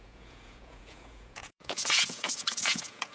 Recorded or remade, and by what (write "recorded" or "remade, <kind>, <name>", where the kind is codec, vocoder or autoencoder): remade, vocoder, Vocos